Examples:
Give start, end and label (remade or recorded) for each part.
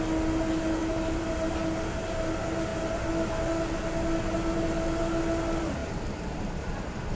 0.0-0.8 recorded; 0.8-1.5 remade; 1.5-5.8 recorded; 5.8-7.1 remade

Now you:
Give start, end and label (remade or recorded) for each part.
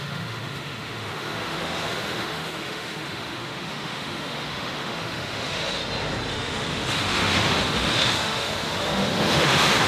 0.0-5.8 remade; 5.8-6.3 recorded; 6.3-9.9 remade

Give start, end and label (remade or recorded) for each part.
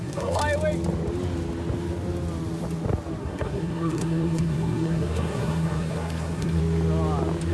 0.0-0.4 remade; 0.4-3.2 recorded; 3.2-6.6 remade; 6.6-7.5 recorded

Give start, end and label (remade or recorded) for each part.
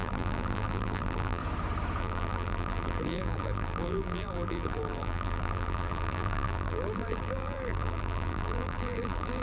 0.0-1.4 remade; 1.4-2.0 recorded; 2.0-9.4 remade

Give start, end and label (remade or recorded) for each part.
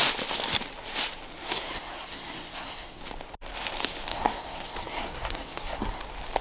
0.0-1.3 recorded; 1.3-3.0 remade; 3.0-4.1 recorded; 4.1-6.0 remade; 6.0-6.4 recorded